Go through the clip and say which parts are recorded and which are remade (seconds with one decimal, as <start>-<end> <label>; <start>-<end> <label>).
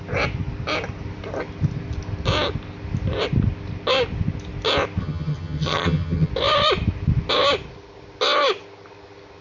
0.0-5.0 recorded; 5.0-6.3 remade; 6.3-9.4 recorded